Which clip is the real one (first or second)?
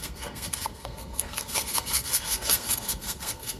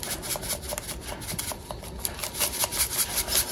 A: second